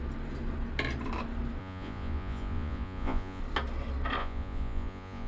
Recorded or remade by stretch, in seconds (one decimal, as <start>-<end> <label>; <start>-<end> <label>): 0.0-1.6 recorded; 1.6-3.4 remade; 3.4-4.2 recorded; 4.2-5.3 remade

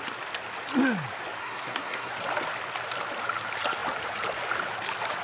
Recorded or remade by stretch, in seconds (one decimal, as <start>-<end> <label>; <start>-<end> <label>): 0.0-1.4 recorded; 1.4-2.1 remade; 2.1-5.2 recorded

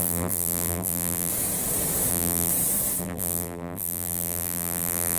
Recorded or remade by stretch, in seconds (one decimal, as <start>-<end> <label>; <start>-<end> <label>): 0.0-1.3 remade; 1.3-2.1 recorded; 2.1-2.5 remade; 2.5-3.0 recorded; 3.0-5.2 remade